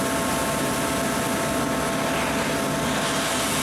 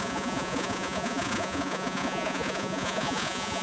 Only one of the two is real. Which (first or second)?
first